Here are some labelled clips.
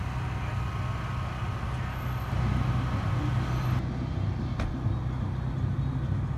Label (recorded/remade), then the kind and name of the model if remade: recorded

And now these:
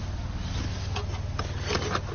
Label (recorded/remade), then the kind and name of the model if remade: recorded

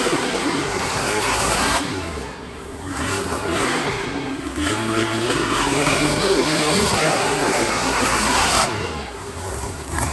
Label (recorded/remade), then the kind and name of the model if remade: remade, codec, SNAC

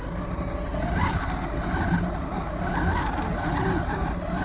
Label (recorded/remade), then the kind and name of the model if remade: recorded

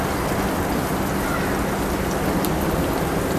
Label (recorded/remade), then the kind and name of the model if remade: recorded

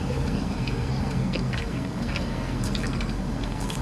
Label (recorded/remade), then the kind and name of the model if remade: remade, codec, SNAC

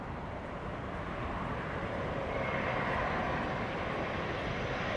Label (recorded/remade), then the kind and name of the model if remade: remade, vocoder, BigVGAN v2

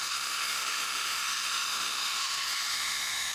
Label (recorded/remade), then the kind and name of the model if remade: remade, autoencoder, DAC-VAE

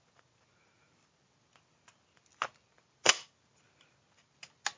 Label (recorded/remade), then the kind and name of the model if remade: recorded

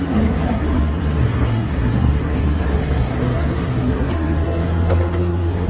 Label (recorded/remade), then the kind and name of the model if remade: remade, codec, SNAC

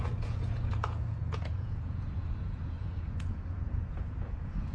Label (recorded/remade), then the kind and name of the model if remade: remade, vocoder, Vocos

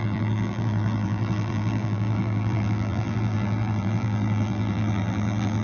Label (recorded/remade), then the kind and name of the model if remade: remade, vocoder, BigVGAN v2